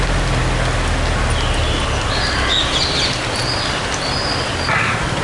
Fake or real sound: real